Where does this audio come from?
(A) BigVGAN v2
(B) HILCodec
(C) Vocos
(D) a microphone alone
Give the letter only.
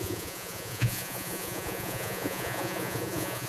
C